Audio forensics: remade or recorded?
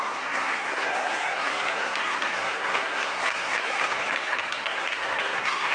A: remade